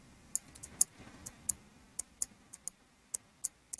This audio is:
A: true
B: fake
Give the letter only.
A